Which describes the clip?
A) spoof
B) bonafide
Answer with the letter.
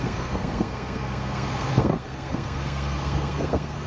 A